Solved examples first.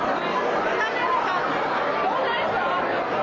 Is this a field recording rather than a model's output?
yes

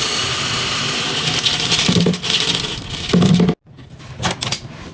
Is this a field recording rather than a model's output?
yes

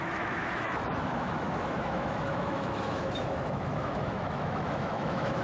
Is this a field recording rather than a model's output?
no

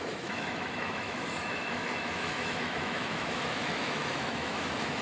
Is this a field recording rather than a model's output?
no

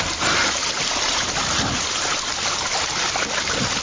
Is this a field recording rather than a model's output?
yes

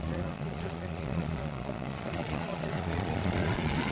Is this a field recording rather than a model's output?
no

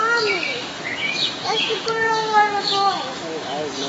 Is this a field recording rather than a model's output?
no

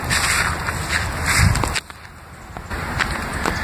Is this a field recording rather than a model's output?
yes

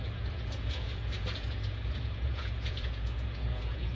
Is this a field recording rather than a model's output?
no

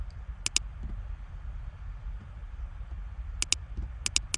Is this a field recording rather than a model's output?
yes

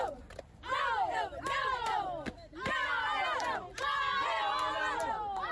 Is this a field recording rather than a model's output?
yes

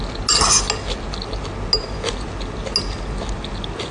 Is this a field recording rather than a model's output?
yes